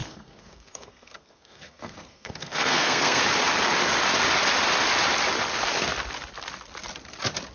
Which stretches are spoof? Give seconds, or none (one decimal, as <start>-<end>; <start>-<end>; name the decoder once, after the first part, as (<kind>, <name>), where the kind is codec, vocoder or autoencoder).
0.0-3.2 (codec, SNAC)